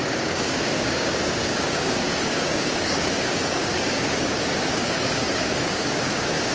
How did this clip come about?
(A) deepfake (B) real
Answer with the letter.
A